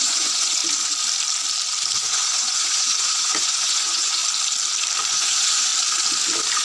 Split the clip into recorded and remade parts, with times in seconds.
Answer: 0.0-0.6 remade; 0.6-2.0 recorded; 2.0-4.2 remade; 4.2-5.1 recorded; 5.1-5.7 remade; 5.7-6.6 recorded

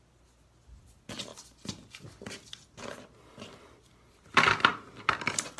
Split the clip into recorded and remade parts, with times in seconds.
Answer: 0.0-5.6 recorded

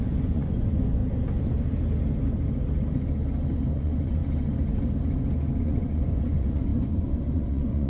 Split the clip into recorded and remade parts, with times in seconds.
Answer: 0.0-1.0 remade; 1.0-3.7 recorded; 3.7-4.2 remade; 4.2-5.6 recorded; 5.6-7.9 remade